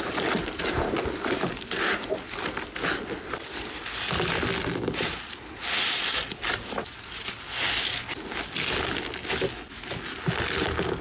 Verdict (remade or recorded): recorded